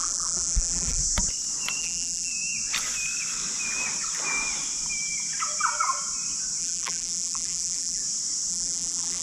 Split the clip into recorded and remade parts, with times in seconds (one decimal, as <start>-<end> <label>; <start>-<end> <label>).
0.0-1.0 remade; 1.0-1.8 recorded; 1.8-2.3 remade; 2.3-6.6 recorded; 6.6-8.0 remade; 8.0-8.5 recorded; 8.5-9.2 remade